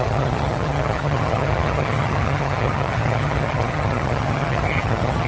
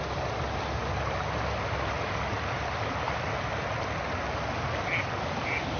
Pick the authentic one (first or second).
second